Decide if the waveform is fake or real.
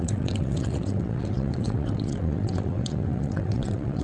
fake